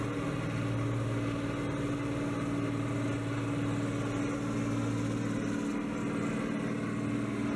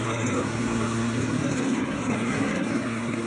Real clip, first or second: first